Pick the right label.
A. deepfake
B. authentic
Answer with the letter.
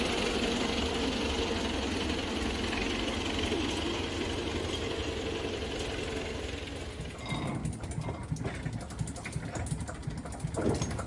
B